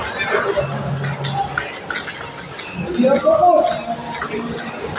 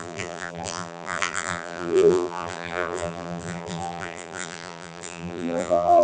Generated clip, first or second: second